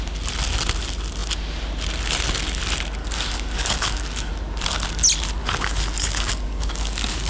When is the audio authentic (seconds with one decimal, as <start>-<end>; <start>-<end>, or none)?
0.0-3.0; 4.3-5.4